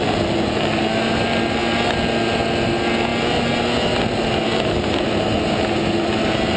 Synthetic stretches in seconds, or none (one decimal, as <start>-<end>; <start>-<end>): 5.8-6.6